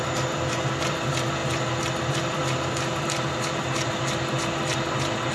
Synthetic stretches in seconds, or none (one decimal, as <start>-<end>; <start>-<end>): none